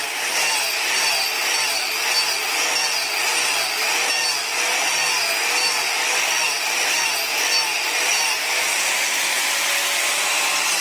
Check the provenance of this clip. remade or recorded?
recorded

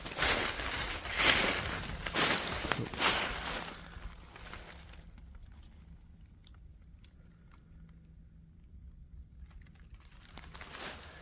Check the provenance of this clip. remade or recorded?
recorded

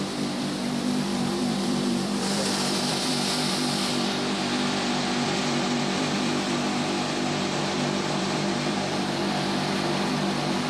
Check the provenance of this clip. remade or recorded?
remade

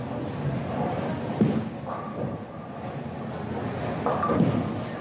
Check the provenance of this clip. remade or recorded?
recorded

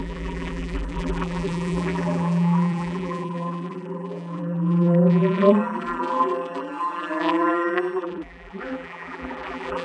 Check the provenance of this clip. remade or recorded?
remade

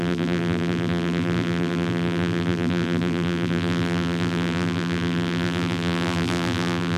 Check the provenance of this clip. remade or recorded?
remade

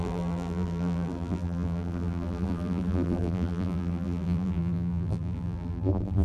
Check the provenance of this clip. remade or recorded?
remade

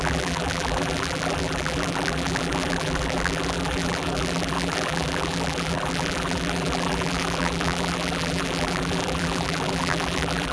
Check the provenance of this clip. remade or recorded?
remade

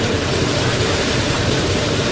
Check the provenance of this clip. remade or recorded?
remade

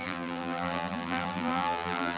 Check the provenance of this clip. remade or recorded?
remade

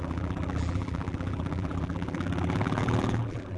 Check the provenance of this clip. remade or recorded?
remade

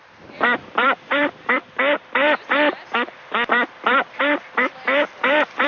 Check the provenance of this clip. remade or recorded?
remade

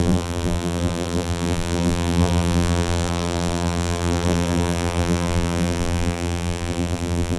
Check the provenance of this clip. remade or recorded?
remade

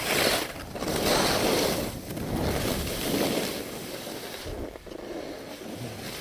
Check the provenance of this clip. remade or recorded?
recorded